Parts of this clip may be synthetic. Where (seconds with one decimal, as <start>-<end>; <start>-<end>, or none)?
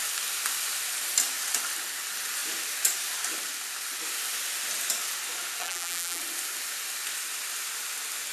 5.6-6.2